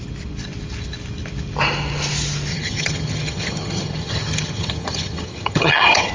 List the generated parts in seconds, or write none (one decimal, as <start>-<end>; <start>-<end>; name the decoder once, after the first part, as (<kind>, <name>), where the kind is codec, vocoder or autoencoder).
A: 2.5-6.1 (vocoder, HiFi-GAN)